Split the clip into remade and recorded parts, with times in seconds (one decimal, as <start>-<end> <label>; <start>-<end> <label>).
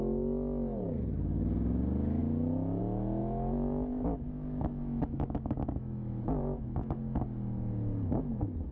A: 0.0-2.2 recorded; 2.2-2.8 remade; 2.8-3.2 recorded; 3.2-7.2 remade; 7.2-8.7 recorded